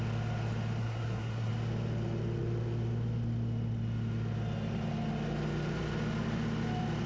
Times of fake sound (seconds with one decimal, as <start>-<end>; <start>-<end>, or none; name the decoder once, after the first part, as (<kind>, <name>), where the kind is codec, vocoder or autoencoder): 0.8-1.5 (codec, SNAC)